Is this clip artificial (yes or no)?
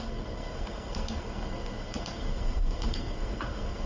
yes